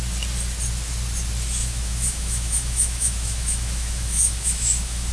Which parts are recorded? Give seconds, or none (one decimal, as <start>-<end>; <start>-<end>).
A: 0.0-1.6

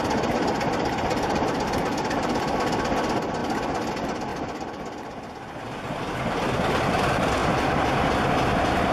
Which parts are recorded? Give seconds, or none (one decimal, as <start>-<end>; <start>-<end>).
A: 0.0-8.9

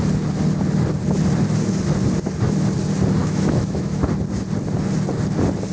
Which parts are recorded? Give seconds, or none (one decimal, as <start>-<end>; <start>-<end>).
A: 0.0-3.2; 4.0-5.7

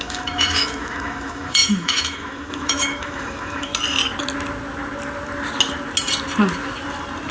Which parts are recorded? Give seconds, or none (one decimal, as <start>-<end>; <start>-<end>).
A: 3.7-7.3

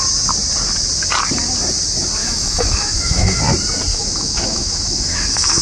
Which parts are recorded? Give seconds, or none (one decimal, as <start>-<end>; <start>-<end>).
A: 0.0-2.2; 3.4-3.9